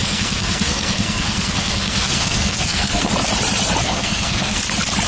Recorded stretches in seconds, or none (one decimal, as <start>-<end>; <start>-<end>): 3.1-3.8; 4.6-5.1